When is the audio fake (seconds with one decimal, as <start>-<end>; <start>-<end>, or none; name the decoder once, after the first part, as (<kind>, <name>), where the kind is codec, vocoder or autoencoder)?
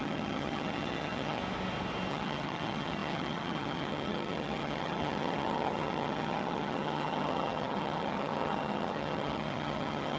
0.0-1.4 (vocoder, HiFi-GAN); 2.1-10.2